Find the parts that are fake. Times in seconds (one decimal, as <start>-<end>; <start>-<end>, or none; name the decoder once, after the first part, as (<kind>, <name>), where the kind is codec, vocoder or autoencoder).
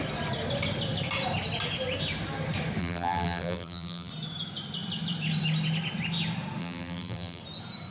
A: 2.8-4.1 (vocoder, BigVGAN v2); 6.6-7.4